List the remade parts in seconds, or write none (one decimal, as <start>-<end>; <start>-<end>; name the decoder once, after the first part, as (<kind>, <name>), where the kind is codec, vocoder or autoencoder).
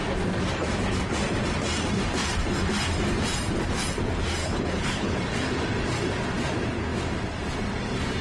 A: 4.4-5.2 (codec, HILCodec)